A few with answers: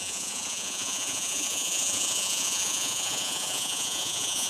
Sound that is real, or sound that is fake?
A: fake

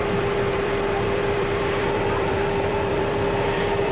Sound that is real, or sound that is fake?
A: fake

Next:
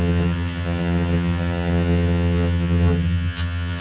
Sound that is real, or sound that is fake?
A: fake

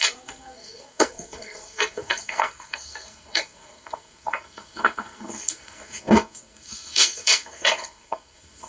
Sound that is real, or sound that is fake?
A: fake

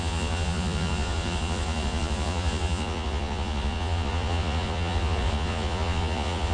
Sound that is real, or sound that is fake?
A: fake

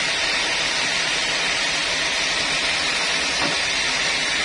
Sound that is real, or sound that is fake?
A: real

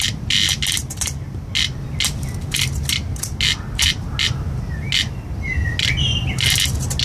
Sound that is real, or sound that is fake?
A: real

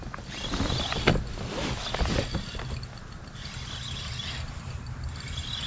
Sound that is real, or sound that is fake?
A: real